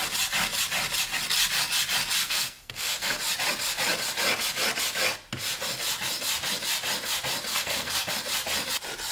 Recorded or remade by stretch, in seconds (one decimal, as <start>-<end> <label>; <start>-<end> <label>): 0.0-2.2 recorded; 2.2-3.2 remade; 3.2-7.5 recorded; 7.5-8.1 remade; 8.1-9.1 recorded